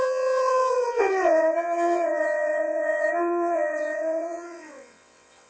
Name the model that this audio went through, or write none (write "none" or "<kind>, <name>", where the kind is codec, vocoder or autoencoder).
vocoder, WaveNeXt